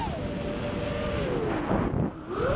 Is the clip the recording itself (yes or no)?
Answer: yes